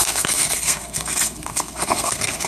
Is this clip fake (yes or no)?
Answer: yes